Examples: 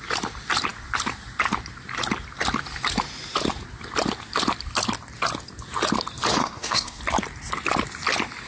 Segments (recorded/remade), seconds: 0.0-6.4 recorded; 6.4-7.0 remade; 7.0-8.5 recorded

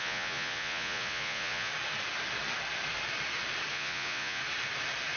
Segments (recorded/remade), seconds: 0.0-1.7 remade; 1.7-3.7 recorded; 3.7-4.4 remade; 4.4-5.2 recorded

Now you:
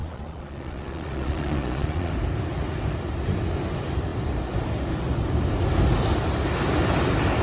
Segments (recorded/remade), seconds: 0.0-2.1 remade; 2.1-7.4 recorded

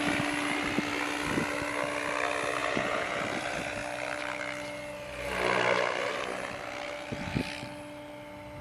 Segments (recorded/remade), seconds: 0.0-2.6 recorded; 2.6-3.2 remade; 3.2-8.6 recorded

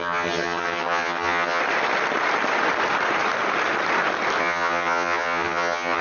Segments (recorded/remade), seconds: 0.0-1.6 remade; 1.6-4.4 recorded; 4.4-6.0 remade